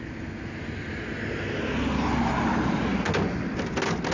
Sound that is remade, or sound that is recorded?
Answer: recorded